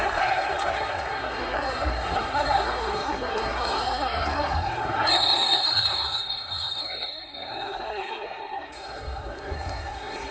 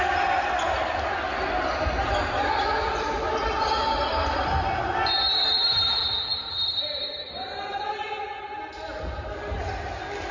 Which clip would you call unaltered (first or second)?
second